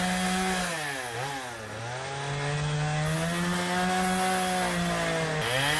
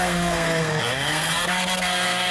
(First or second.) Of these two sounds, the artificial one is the second